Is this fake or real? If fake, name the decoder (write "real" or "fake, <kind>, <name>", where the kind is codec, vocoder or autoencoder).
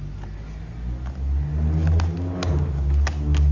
real